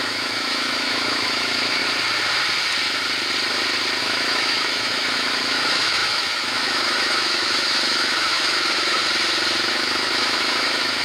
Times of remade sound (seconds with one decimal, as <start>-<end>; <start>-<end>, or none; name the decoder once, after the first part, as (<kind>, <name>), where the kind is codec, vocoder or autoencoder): 0.0-1.8 (autoencoder, DAC-VAE); 4.0-9.0; 9.7-11.0